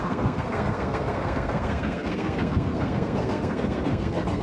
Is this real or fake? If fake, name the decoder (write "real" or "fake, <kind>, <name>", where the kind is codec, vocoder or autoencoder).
fake, codec, SNAC